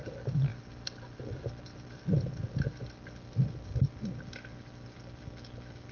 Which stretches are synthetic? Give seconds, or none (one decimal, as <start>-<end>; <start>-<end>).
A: none